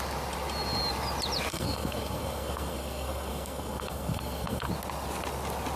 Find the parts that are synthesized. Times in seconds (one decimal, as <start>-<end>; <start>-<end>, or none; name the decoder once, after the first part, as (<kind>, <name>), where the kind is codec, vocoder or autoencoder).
1.5-4.7 (codec, SNAC)